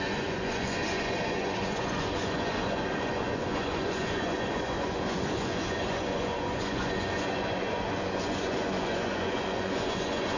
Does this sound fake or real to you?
fake